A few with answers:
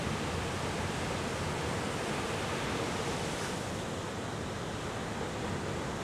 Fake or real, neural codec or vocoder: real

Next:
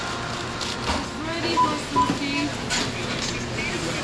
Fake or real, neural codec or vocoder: real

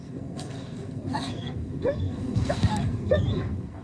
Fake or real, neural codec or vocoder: fake, codec, SNAC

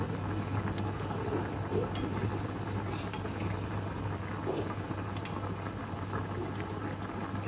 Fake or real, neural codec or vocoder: real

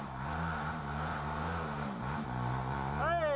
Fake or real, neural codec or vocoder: real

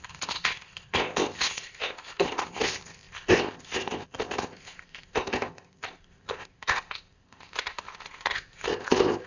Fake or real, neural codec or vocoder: fake, codec, ZipCodec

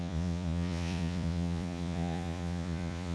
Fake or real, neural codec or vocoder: fake, vocoder, Vocos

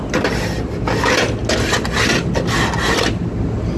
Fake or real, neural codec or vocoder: real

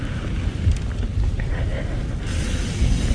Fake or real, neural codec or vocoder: real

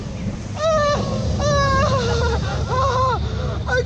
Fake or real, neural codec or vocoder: real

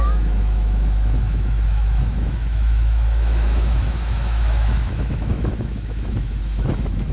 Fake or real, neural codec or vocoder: fake, autoencoder, DAC-VAE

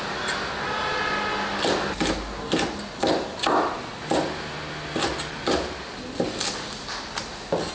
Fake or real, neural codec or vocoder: real